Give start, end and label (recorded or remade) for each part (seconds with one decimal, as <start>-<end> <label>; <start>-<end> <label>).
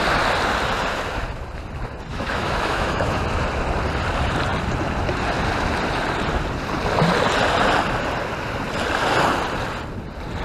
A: 0.0-2.1 recorded; 2.1-3.2 remade; 3.2-10.4 recorded